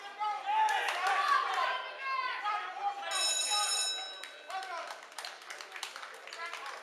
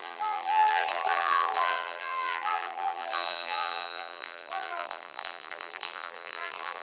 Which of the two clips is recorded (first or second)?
first